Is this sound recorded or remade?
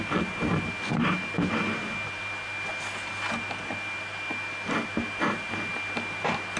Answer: recorded